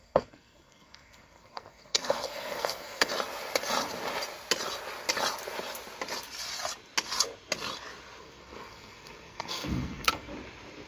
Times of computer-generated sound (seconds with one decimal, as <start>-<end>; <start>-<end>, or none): 0.0-3.1; 8.2-10.3